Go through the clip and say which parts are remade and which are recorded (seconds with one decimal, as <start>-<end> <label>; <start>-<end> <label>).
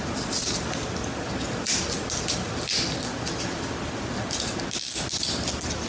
0.0-5.9 recorded